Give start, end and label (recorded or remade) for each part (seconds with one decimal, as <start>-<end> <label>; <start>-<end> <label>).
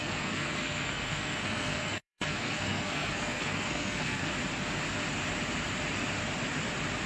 0.0-4.3 remade; 4.3-7.1 recorded